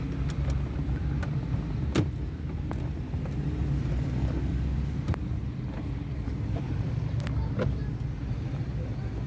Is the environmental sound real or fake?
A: real